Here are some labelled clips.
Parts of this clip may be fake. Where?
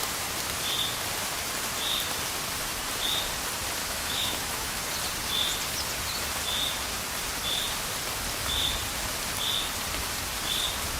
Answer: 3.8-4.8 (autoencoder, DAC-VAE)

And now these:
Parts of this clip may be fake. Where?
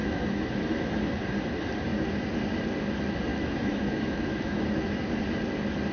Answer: 0.0-0.6 (autoencoder, DAC-VAE); 3.3-5.2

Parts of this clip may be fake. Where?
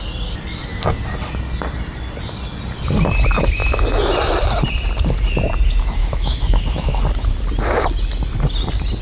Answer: 6.0-7.0 (autoencoder, DAC-VAE)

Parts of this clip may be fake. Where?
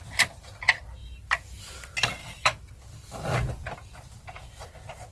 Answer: 2.2-2.7 (autoencoder, DAC-VAE)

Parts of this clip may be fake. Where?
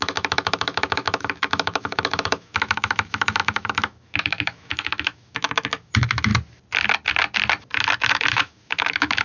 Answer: 0.0-6.3 (autoencoder, DAC-VAE); 8.1-9.2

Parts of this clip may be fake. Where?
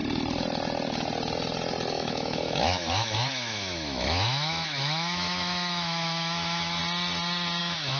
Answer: 1.9-6.8 (autoencoder, DAC-VAE); 7.6-8.0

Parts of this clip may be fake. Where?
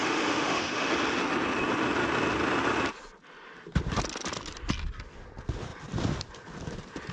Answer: 0.0-0.9 (autoencoder, DAC-VAE)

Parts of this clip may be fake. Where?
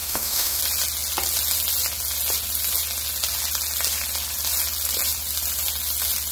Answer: 0.0-0.6 (autoencoder, DAC-VAE)